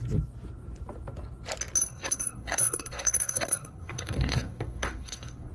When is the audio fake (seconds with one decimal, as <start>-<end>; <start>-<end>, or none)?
1.9-5.5